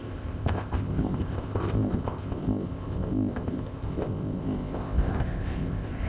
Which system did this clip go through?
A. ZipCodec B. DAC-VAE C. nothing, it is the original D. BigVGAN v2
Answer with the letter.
A